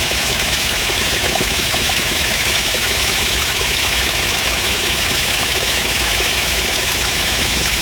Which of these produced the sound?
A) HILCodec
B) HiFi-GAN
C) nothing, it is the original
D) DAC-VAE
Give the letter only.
D